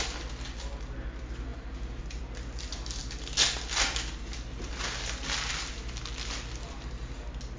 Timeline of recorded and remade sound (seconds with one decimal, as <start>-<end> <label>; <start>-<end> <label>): 0.0-7.6 recorded